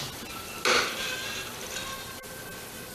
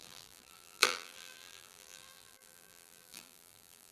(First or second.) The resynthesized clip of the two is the second